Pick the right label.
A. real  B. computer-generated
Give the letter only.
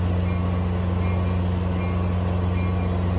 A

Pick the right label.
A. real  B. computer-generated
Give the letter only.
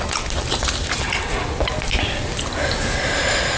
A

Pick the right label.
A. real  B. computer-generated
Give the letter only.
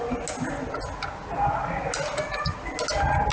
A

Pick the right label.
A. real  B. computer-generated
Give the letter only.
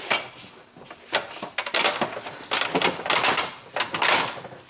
A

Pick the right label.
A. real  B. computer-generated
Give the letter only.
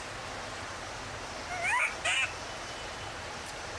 A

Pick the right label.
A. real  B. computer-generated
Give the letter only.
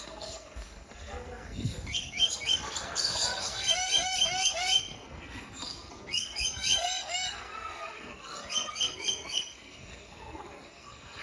B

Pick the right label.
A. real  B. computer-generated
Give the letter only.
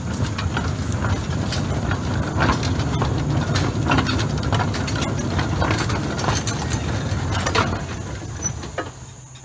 A